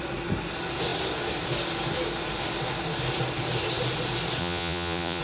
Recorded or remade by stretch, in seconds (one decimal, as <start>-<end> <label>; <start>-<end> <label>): 0.0-4.4 recorded; 4.4-5.2 remade

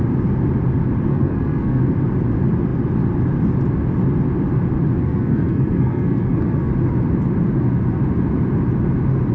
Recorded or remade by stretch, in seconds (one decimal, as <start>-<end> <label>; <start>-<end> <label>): 0.0-1.1 recorded; 1.1-1.8 remade; 1.8-5.0 recorded; 5.0-6.7 remade; 6.7-9.3 recorded